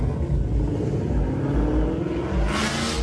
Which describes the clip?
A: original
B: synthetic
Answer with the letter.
A